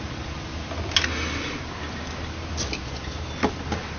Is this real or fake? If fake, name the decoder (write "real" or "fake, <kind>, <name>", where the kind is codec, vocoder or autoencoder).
real